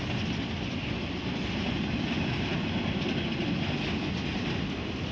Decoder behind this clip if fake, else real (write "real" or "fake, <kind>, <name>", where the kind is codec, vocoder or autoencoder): real